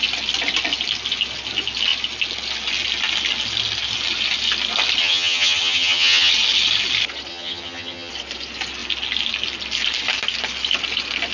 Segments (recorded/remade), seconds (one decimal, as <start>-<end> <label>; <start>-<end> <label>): 0.0-5.0 recorded; 5.0-6.3 remade; 6.3-7.3 recorded; 7.3-8.1 remade; 8.1-11.3 recorded